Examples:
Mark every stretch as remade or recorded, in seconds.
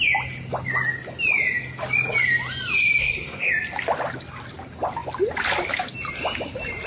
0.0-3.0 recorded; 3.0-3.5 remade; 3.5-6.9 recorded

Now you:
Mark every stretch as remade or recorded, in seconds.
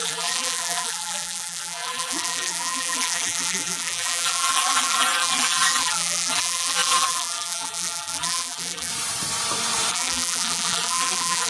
0.0-8.9 remade; 8.9-9.9 recorded; 9.9-11.5 remade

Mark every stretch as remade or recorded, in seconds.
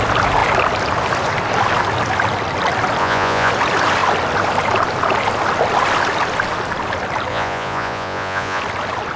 0.0-3.0 recorded; 3.0-3.5 remade; 3.5-7.3 recorded; 7.3-8.6 remade; 8.6-9.2 recorded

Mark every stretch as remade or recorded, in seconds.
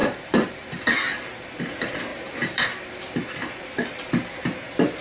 0.0-0.8 remade; 0.8-2.1 recorded; 2.1-3.5 remade; 3.5-5.0 recorded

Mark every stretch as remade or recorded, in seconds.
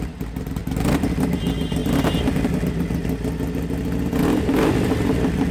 0.0-5.5 recorded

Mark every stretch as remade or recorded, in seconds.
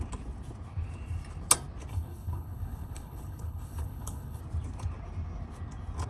0.0-1.9 recorded; 1.9-4.4 remade; 4.4-6.1 recorded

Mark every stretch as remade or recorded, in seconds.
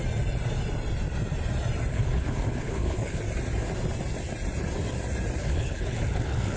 0.0-1.9 recorded; 1.9-3.2 remade; 3.2-5.4 recorded; 5.4-6.6 remade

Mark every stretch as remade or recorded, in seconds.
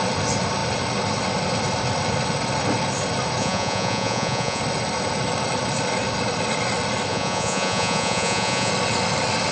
0.0-3.4 recorded; 3.4-4.6 remade; 4.6-7.1 recorded; 7.1-8.7 remade; 8.7-9.5 recorded